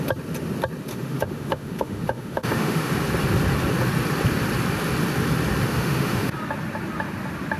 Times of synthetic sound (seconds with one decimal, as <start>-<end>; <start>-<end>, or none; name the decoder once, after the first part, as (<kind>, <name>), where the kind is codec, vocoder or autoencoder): 0.9-2.9 (autoencoder, DAC-VAE); 5.7-6.3